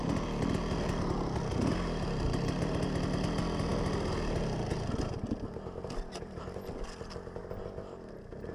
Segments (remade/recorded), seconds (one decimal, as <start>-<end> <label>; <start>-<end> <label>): 0.0-8.5 recorded